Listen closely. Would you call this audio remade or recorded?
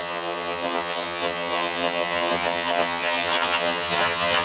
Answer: remade